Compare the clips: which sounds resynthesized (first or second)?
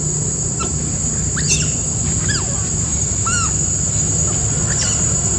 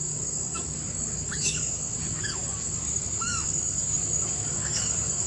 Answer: second